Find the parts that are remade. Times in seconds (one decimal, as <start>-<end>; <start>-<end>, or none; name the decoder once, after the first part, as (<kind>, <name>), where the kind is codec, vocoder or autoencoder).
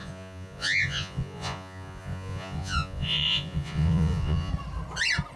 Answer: 0.0-4.5 (vocoder, Vocos)